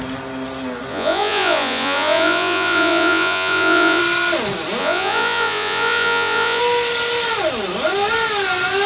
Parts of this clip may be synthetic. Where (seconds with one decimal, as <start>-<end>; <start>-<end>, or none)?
0.9-4.0; 4.8-6.6